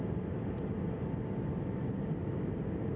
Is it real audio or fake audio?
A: real